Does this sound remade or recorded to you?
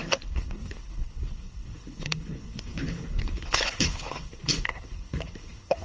remade